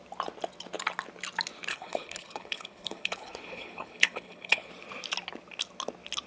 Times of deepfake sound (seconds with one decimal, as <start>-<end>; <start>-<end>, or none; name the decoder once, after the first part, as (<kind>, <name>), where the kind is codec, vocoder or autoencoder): 1.7-4.7 (codec, HILCodec)